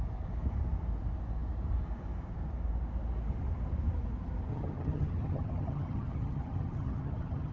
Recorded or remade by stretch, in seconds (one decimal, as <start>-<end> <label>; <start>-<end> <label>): 0.0-4.5 recorded; 4.5-7.5 remade